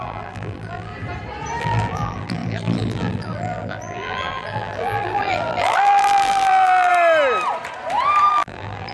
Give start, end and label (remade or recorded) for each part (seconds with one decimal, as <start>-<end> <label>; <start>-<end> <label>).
0.0-0.9 remade; 0.9-1.6 recorded; 1.6-6.9 remade; 6.9-8.3 recorded; 8.3-8.9 remade